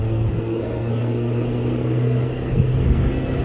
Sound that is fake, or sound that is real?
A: fake